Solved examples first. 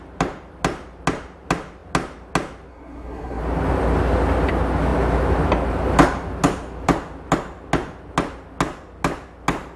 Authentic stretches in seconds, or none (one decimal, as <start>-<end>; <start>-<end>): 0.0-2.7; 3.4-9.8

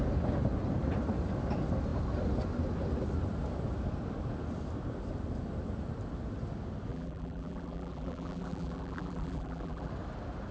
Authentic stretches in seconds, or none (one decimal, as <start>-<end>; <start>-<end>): 0.0-6.9; 9.9-10.5

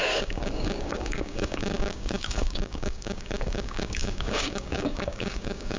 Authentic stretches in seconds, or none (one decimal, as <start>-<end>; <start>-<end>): none